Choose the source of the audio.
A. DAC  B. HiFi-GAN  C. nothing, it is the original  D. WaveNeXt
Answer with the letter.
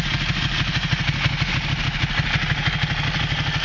C